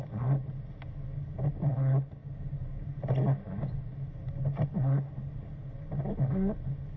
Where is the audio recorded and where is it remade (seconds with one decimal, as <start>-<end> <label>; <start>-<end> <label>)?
0.0-7.0 recorded